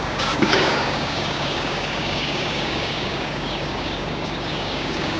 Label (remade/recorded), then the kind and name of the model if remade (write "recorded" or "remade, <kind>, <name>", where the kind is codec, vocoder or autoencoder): remade, codec, DAC